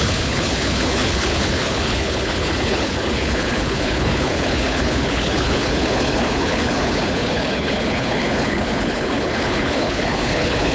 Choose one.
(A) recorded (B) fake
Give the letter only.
B